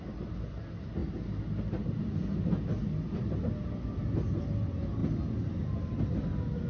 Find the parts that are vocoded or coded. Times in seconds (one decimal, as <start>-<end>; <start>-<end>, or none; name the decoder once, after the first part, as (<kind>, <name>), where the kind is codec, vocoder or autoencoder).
none